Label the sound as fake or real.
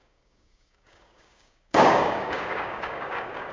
fake